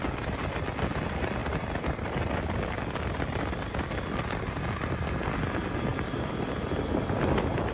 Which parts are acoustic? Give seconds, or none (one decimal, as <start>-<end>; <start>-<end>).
0.0-7.7